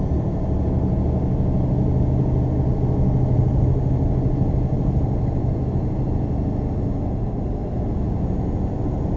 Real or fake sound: real